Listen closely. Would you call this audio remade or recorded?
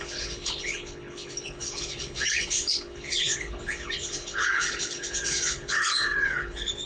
remade